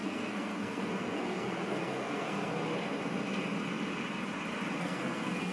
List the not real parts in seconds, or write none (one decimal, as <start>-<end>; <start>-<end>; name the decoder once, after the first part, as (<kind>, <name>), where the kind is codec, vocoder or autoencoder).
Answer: 0.0-2.5 (codec, SNAC); 4.8-5.5